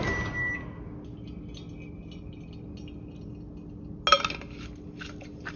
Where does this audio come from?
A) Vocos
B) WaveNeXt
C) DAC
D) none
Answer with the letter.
D